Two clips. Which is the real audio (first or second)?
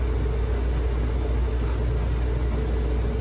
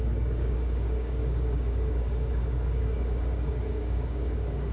first